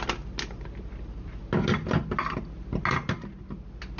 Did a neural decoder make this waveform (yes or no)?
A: no